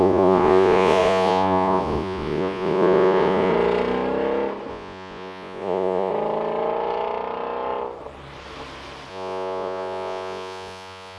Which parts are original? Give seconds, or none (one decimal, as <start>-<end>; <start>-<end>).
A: 3.5-4.7; 6.1-9.1